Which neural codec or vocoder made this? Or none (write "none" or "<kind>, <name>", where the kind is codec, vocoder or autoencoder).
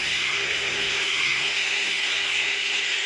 codec, SNAC